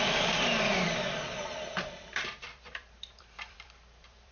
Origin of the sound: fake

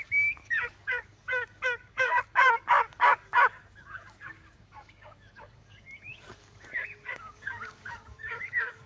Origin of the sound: fake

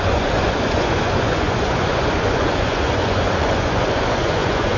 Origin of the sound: fake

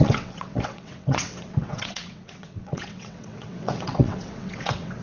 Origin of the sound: fake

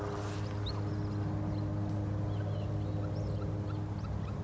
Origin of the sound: real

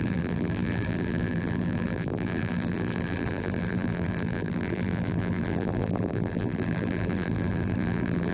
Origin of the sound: fake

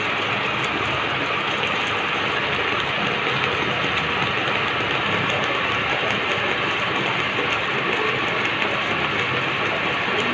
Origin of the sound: real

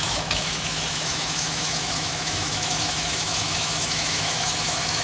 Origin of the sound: fake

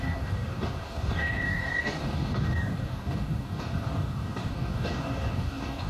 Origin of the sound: fake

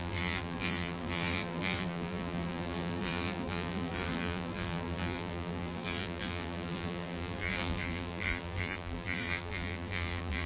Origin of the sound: fake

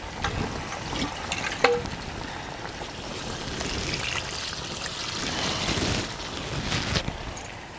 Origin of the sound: real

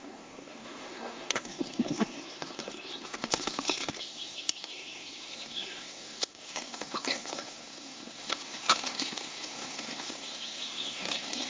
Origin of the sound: fake